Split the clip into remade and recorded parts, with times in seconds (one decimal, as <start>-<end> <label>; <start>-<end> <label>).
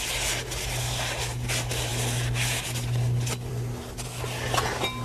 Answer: 0.0-5.0 recorded